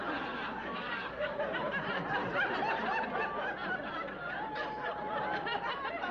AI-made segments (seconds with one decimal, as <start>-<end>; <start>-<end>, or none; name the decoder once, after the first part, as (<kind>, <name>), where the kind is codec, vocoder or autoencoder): 0.6-1.3 (codec, DAC)